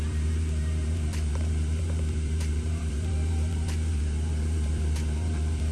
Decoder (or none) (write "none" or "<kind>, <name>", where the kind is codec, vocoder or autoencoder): vocoder, BigVGAN v2